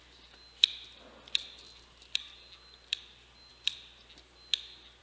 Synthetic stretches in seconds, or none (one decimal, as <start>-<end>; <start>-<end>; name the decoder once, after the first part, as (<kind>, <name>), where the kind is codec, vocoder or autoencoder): none